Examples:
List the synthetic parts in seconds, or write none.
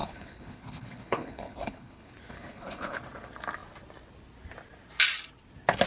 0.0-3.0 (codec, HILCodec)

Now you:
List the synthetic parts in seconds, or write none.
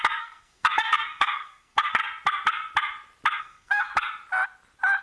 0.0-2.0 (codec, SNAC); 3.4-3.9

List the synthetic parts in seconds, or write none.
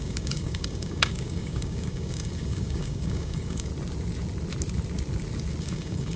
0.0-3.7 (codec, DAC); 5.6-6.2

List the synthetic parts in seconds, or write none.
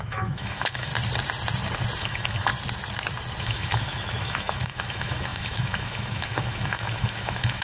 0.0-0.9 (autoencoder, DAC-VAE); 2.0-2.5; 3.4-7.6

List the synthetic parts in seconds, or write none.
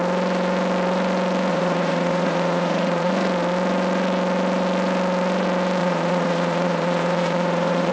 1.5-3.1 (vocoder, Vocos); 5.8-7.9